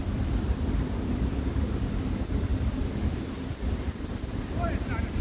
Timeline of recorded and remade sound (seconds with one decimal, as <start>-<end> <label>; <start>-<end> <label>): 0.0-5.2 recorded